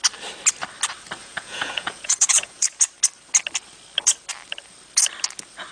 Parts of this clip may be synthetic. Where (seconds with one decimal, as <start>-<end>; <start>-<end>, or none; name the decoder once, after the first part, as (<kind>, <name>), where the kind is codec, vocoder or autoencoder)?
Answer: 1.2-2.8 (vocoder, Vocos)